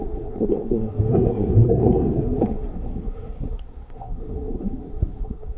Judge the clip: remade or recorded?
remade